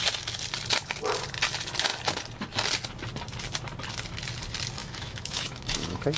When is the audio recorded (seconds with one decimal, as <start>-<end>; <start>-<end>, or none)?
0.0-4.8